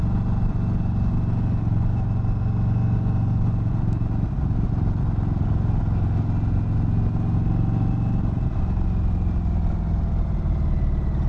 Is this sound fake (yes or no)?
no